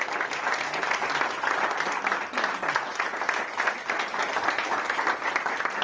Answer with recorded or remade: recorded